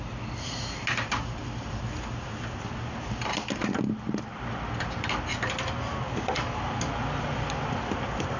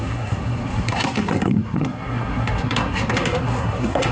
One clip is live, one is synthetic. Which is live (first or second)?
first